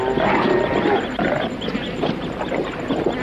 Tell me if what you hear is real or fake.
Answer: real